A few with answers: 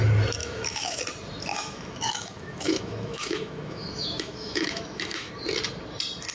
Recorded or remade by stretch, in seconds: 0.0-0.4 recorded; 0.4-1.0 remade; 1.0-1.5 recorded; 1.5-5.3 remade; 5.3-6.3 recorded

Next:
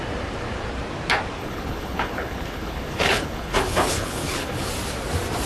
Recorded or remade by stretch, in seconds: 0.0-1.4 recorded; 1.4-4.7 remade; 4.7-5.5 recorded

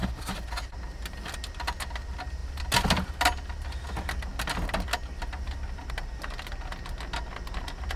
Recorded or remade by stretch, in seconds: 0.0-8.0 recorded

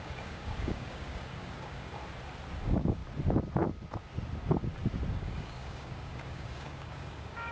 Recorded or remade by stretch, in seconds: 0.0-2.0 remade; 2.0-2.6 recorded; 2.6-3.0 remade; 3.0-5.1 recorded; 5.1-7.5 remade

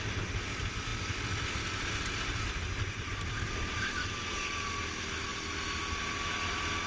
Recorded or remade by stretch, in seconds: 0.0-6.9 recorded